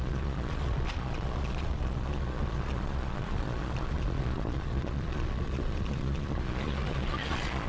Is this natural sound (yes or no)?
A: no